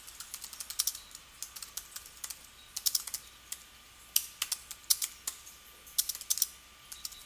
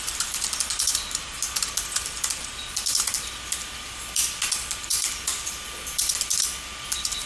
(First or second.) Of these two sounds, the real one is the first